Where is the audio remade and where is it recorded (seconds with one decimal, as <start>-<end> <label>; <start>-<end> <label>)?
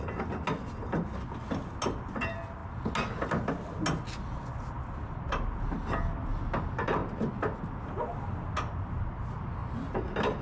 0.0-10.4 recorded